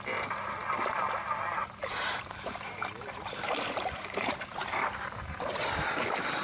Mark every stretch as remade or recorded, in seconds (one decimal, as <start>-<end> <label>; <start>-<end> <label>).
0.0-1.6 recorded; 1.6-5.4 remade; 5.4-6.4 recorded